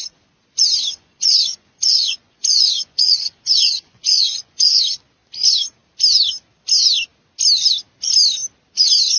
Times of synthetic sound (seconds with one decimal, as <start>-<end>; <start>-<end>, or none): 0.9-4.8